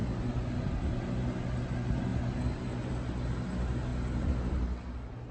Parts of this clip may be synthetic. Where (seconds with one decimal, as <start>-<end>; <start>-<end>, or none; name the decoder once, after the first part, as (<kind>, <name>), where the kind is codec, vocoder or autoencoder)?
none